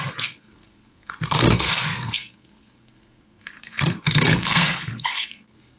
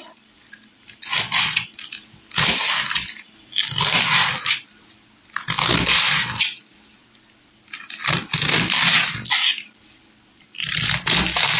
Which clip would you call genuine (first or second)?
second